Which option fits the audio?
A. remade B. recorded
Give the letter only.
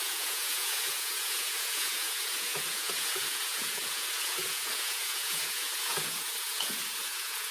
A